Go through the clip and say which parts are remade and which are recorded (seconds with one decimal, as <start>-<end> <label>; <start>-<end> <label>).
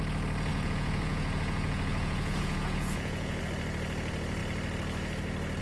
0.0-0.5 recorded; 0.5-3.4 remade; 3.4-5.6 recorded